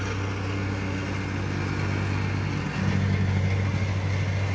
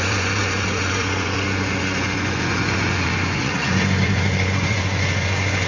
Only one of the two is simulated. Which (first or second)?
second